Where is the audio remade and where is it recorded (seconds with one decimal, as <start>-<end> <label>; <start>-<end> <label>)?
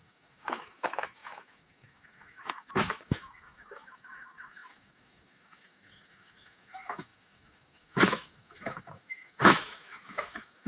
0.0-10.7 remade